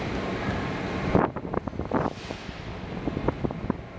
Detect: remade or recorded recorded